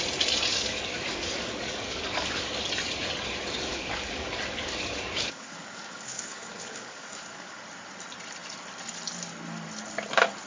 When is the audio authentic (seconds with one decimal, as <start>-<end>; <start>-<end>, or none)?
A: 0.0-0.5; 2.6-3.7; 7.6-10.5